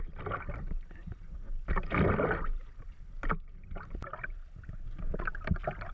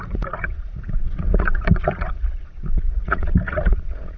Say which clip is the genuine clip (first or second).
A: first